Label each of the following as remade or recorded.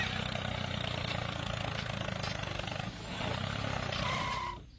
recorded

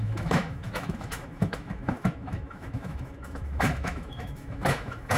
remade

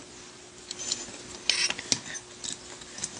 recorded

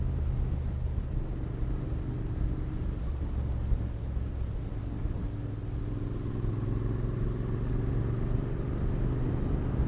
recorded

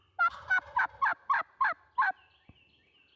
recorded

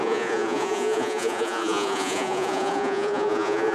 remade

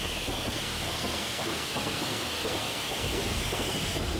remade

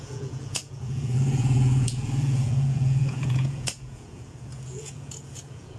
remade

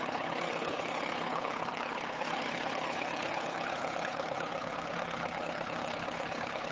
remade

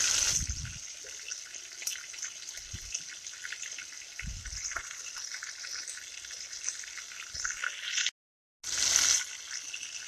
recorded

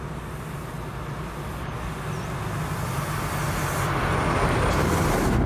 recorded